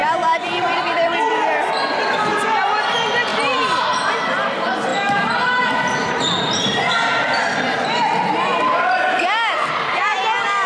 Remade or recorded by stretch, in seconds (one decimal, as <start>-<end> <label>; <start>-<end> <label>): 0.0-1.1 remade; 1.1-10.7 recorded